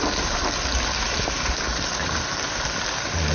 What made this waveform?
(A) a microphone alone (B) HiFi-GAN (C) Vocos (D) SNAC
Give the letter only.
A